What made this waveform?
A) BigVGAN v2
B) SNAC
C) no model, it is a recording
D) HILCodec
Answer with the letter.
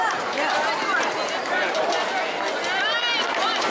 C